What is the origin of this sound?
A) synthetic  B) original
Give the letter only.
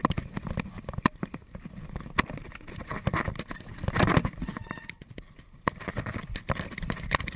B